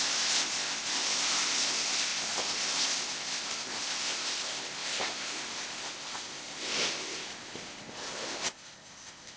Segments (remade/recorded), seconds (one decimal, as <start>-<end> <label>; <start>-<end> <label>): 0.0-9.4 remade